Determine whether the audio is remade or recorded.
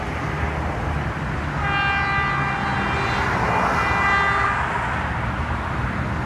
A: recorded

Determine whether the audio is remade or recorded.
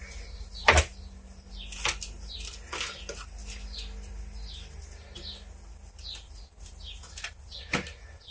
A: recorded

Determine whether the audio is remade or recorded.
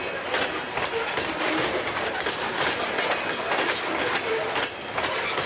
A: recorded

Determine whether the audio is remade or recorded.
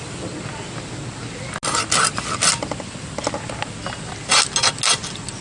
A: recorded